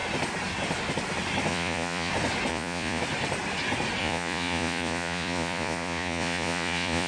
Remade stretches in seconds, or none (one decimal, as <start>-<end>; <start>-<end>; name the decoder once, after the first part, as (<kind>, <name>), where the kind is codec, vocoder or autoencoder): 1.5-2.1 (vocoder, Vocos); 2.5-3.0; 4.0-7.1